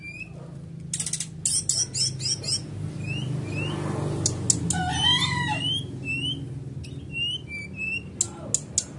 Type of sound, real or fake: real